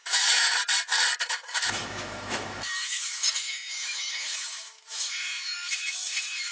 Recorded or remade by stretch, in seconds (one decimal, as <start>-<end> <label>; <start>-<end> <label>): 0.0-0.6 remade; 0.6-1.2 recorded; 1.2-6.5 remade